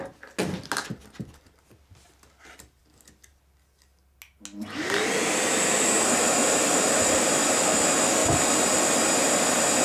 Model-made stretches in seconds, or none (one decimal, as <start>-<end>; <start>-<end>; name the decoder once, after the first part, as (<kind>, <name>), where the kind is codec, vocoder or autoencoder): none